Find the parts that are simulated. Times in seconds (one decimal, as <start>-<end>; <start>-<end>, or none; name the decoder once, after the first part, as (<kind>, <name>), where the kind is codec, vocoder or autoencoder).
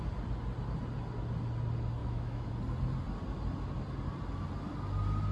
2.0-2.5 (autoencoder, DAC-VAE)